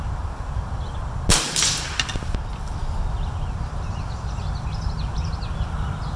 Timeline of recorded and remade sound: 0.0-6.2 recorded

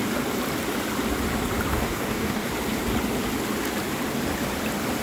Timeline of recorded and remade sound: 0.0-1.7 recorded; 1.7-2.5 remade; 2.5-5.0 recorded

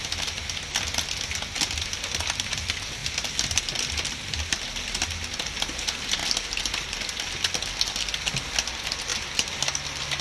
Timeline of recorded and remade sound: 0.0-3.0 recorded; 3.0-3.6 remade; 3.6-9.1 recorded; 9.1-10.2 remade

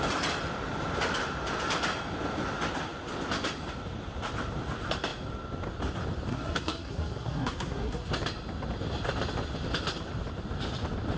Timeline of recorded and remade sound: 0.0-6.3 recorded; 6.3-8.1 remade; 8.1-11.2 recorded